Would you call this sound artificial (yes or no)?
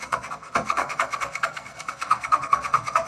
yes